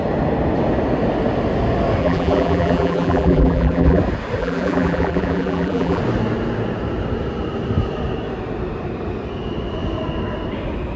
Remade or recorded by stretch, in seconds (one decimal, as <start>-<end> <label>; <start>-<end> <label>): 0.0-2.0 recorded; 2.0-4.0 remade; 4.0-4.4 recorded; 4.4-6.0 remade; 6.0-11.0 recorded